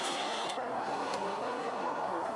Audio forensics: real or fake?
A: fake